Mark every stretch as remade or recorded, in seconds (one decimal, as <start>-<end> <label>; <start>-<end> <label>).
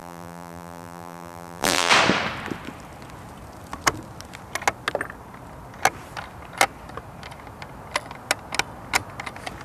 0.0-1.9 remade; 1.9-9.6 recorded